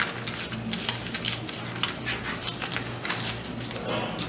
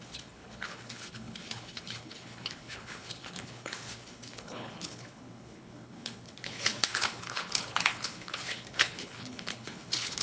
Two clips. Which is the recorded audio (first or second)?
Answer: first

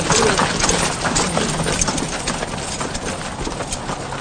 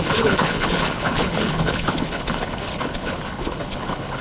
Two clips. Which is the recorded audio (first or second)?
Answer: first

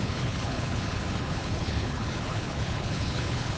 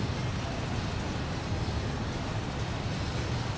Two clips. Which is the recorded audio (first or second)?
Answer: second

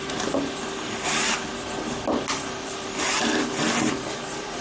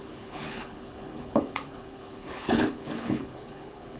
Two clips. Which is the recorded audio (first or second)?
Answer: first